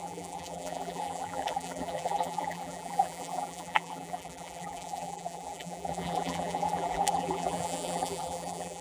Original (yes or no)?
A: no